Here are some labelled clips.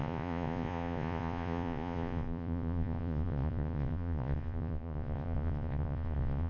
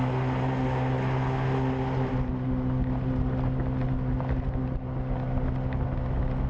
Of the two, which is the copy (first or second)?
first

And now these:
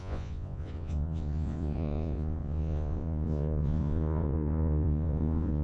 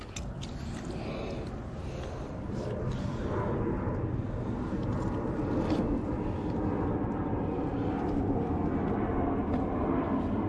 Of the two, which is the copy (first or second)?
first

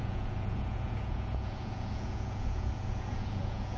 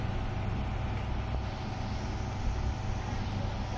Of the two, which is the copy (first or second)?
first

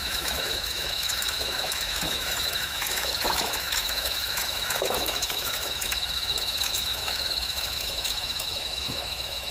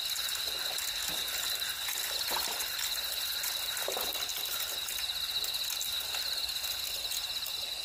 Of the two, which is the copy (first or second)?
first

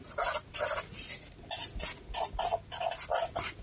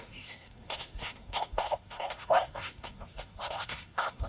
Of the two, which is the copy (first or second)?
second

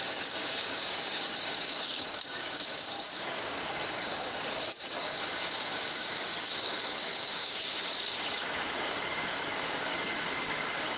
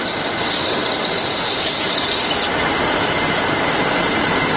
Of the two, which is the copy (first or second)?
first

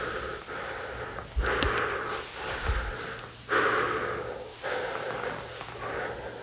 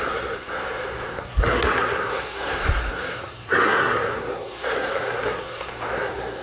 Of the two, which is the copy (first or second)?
second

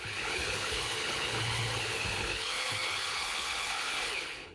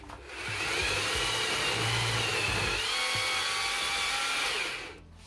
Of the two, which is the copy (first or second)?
first